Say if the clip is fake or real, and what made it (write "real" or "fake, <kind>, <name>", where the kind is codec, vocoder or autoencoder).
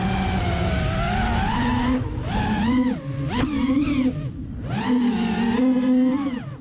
real